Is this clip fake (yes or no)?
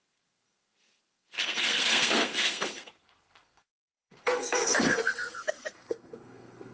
yes